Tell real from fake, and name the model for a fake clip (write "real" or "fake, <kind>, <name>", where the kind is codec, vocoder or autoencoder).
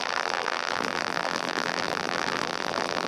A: fake, vocoder, BigVGAN v2